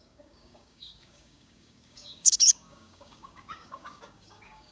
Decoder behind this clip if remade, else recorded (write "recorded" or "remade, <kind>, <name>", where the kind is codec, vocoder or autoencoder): remade, codec, DAC